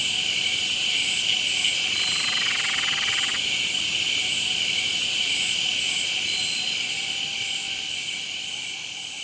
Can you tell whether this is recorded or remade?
recorded